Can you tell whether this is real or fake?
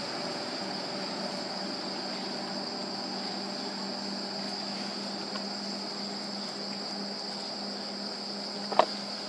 real